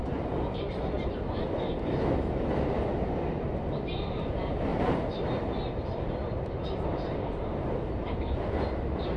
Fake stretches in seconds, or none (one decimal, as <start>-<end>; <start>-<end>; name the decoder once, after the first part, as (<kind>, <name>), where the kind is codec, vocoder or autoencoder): 4.7-5.5 (vocoder, BigVGAN v2); 6.9-9.2